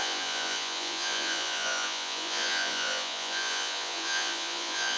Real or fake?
fake